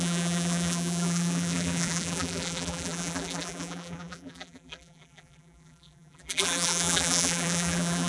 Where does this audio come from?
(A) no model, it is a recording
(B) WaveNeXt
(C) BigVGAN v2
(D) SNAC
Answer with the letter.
C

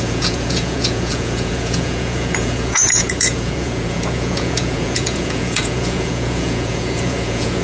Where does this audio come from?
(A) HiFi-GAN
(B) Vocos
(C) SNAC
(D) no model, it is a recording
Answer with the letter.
B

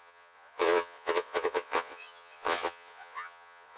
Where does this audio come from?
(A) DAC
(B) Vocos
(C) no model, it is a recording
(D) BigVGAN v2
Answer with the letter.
B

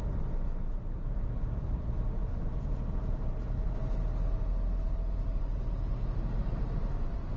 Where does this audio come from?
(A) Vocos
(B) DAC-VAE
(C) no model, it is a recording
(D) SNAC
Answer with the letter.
C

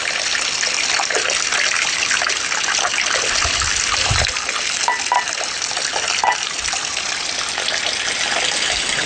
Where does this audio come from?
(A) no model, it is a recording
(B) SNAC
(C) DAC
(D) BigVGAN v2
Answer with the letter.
A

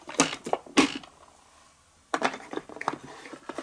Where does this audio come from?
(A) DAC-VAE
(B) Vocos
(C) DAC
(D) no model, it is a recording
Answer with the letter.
D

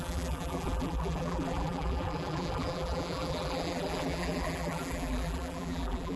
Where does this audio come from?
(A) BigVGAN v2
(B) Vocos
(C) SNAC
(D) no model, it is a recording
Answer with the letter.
A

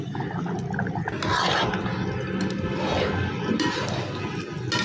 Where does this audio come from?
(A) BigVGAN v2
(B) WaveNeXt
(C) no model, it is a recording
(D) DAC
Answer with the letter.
C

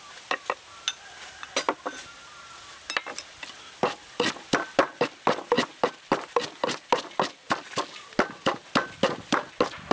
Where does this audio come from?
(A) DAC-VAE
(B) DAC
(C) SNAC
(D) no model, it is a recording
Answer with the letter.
D